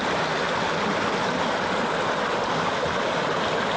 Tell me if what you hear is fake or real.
real